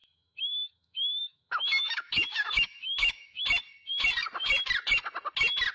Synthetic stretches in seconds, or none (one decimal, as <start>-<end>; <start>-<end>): 0.0-3.4